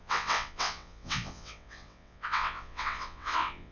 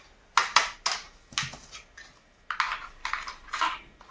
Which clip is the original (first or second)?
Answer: second